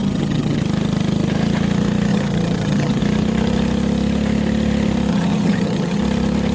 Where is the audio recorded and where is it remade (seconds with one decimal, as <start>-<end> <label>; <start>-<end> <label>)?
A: 0.0-0.6 remade; 0.6-2.1 recorded; 2.1-3.0 remade; 3.0-5.1 recorded; 5.1-6.0 remade; 6.0-6.5 recorded